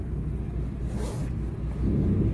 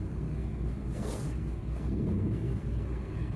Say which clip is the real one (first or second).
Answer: first